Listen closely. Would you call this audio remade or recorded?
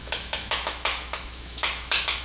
remade